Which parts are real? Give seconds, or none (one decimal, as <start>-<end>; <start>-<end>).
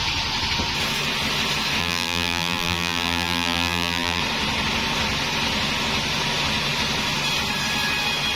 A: 0.0-1.8; 4.2-8.4